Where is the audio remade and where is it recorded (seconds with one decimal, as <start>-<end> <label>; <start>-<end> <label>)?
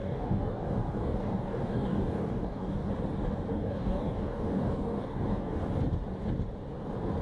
0.0-2.9 remade; 2.9-3.5 recorded; 3.5-5.6 remade; 5.6-7.2 recorded